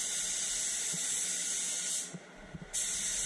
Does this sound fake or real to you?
real